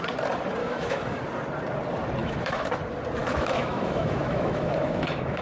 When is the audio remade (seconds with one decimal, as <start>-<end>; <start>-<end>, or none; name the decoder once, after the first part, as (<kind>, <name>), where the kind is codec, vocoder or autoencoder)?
0.6-1.2 (autoencoder, DAC-VAE); 2.2-2.7; 3.2-5.4